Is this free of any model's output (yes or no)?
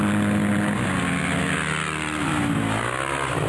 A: yes